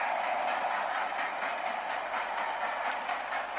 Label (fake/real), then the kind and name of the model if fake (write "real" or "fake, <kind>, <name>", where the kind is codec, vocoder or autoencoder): real